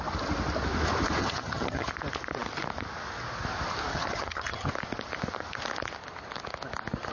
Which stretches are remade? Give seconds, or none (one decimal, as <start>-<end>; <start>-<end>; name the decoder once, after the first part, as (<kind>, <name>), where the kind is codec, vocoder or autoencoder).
1.2-1.9 (vocoder, HiFi-GAN); 3.9-4.7